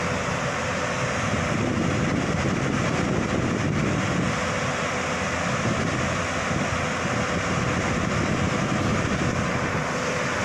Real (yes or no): yes